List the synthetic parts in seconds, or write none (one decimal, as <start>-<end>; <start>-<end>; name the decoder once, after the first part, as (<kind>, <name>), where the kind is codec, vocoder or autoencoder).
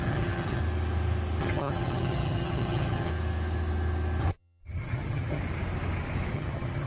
0.0-0.6 (vocoder, HiFi-GAN); 1.4-3.1; 4.2-5.4; 6.3-6.9